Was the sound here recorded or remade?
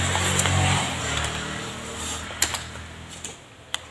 recorded